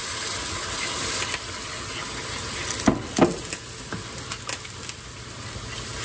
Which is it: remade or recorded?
recorded